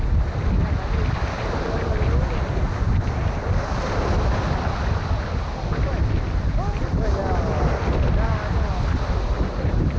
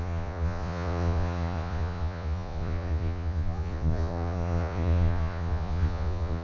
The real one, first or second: first